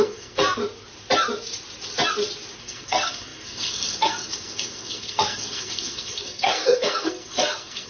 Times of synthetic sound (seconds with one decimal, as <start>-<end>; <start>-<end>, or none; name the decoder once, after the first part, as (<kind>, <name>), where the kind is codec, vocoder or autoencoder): 0.0-0.6 (codec, SNAC); 2.6-7.9